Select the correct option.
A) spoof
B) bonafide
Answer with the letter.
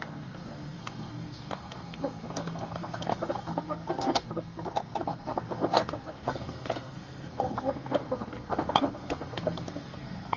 A